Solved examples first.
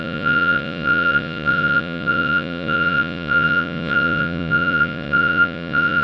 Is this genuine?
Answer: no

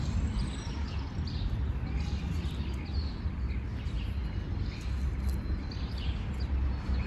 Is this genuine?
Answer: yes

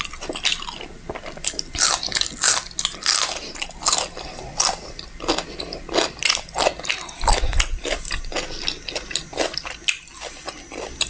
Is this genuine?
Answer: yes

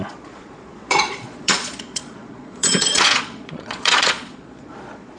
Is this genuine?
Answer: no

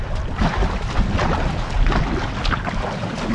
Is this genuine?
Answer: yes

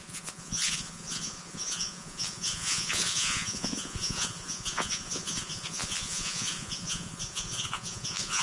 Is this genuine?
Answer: no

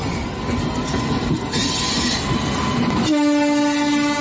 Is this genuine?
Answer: yes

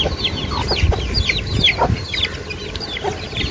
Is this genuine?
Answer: yes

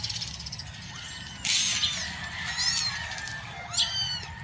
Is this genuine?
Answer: yes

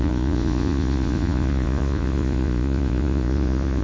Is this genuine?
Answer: no